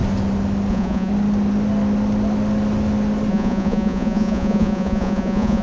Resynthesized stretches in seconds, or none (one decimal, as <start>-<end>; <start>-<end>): 0.7-1.1; 3.3-5.6